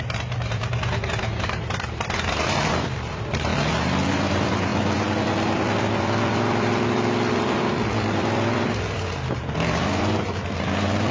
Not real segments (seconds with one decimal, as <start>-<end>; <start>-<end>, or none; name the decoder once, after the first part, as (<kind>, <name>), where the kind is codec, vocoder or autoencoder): 0.0-3.5 (vocoder, BigVGAN v2); 4.1-11.1